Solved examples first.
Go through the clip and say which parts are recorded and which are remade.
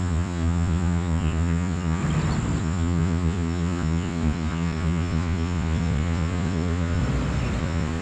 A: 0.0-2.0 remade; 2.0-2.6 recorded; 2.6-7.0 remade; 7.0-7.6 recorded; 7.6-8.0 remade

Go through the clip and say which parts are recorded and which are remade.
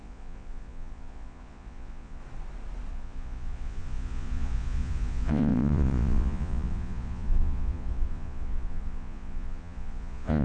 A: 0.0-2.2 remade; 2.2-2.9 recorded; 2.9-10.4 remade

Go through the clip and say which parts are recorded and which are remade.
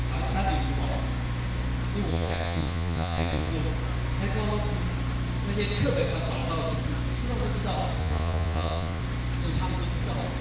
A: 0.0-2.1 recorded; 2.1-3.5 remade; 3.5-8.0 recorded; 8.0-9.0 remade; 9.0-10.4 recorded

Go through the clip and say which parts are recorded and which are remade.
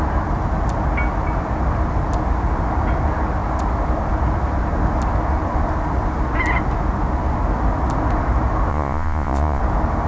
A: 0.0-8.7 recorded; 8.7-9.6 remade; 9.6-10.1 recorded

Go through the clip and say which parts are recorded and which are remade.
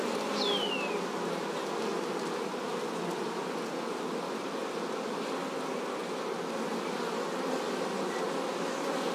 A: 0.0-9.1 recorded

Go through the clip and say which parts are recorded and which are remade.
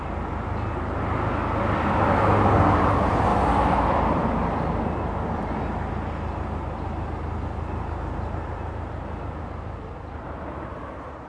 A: 0.0-11.3 recorded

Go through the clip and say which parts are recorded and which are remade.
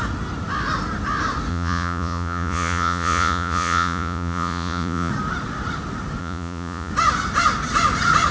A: 0.0-1.5 recorded; 1.5-5.1 remade; 5.1-6.2 recorded; 6.2-6.9 remade; 6.9-8.3 recorded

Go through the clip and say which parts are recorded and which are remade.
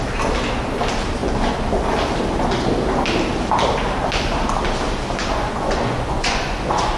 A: 0.0-5.2 recorded; 5.2-7.0 remade